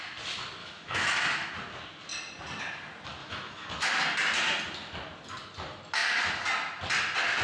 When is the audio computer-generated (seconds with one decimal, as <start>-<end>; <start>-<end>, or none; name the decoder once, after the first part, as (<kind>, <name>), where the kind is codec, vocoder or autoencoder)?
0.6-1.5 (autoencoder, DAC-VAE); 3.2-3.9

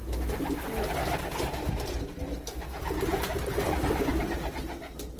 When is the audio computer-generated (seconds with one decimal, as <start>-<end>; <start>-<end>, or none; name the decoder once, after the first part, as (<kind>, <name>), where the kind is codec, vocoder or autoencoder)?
none

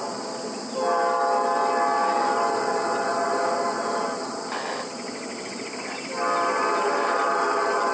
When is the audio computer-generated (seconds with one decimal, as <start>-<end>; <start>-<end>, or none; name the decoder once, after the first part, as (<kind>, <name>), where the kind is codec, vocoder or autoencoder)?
none